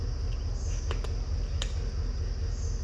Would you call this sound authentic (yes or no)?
yes